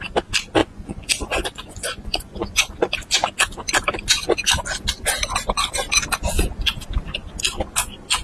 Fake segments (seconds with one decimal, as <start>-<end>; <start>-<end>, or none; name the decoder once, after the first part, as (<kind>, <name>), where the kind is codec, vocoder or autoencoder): 0.6-2.9 (vocoder, Vocos)